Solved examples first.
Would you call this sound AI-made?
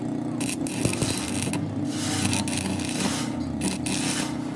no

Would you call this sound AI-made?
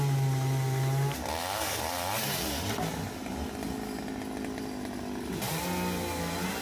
no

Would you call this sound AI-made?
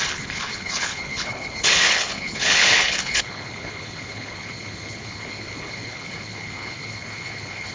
yes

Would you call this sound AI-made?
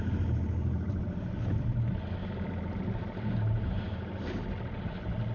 no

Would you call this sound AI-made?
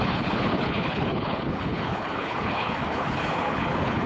yes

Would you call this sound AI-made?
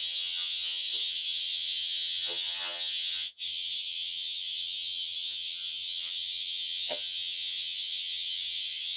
yes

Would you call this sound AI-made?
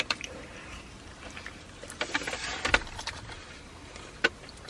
no